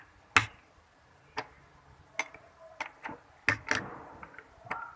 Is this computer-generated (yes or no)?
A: no